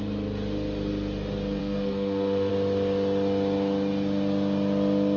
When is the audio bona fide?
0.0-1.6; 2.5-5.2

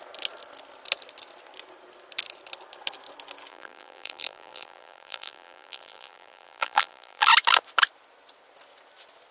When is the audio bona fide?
0.0-3.5; 7.3-9.3

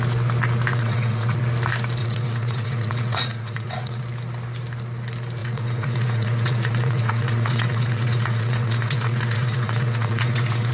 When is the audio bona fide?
0.0-0.7; 1.4-2.0; 4.0-5.4